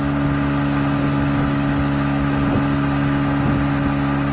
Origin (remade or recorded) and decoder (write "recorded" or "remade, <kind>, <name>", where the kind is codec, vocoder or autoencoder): recorded